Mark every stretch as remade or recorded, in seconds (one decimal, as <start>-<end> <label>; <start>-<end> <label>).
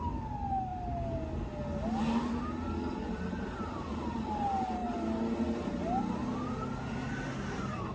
0.0-7.9 recorded